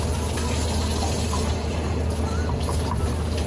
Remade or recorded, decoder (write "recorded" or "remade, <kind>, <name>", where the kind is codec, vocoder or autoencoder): recorded